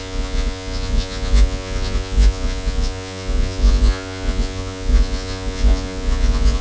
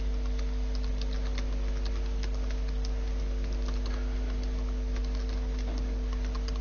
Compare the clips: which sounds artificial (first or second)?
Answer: first